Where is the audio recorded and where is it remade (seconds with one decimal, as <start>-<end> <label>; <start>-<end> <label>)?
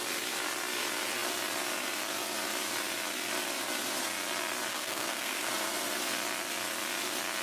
0.0-4.7 recorded; 4.7-5.5 remade; 5.5-7.4 recorded